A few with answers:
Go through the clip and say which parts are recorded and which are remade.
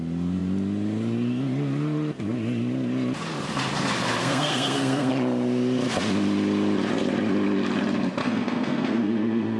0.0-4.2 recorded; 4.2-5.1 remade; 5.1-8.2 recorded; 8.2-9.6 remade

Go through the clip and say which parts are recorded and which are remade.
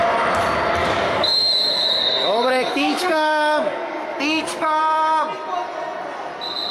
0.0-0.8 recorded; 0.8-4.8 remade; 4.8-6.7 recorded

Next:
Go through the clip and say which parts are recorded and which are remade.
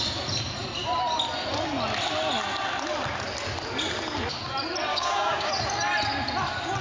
0.0-4.9 recorded; 4.9-5.5 remade; 5.5-6.8 recorded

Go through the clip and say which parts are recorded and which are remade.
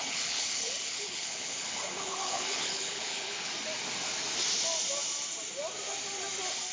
0.0-3.5 remade; 3.5-6.7 recorded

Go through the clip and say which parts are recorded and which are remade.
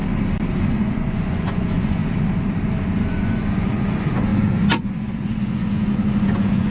0.0-0.7 recorded; 0.7-2.0 remade; 2.0-3.1 recorded; 3.1-6.7 remade